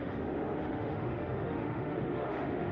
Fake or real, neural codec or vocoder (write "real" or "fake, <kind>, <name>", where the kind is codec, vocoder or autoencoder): fake, autoencoder, DAC-VAE